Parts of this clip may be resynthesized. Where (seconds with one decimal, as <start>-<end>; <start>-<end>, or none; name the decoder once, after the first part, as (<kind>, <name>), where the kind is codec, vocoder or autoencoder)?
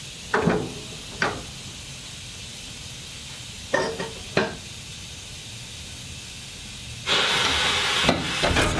none